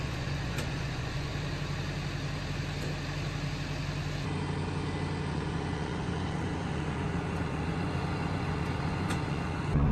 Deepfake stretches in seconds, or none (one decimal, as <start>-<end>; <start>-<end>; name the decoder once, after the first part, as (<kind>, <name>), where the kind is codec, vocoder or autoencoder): 0.0-1.3 (vocoder, Vocos); 5.3-9.9